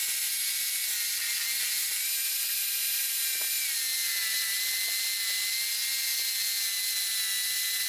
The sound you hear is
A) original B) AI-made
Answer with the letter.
A